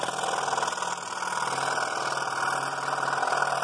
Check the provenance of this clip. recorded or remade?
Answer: recorded